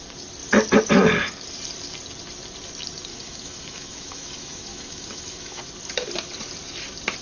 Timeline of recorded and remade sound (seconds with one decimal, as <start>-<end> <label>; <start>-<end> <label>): 0.0-3.1 recorded; 3.1-5.6 remade; 5.6-7.2 recorded